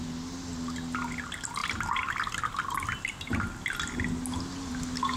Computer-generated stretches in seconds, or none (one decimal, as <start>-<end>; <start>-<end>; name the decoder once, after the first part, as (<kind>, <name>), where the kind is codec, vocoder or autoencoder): none